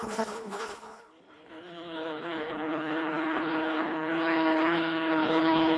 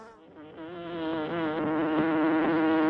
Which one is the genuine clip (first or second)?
second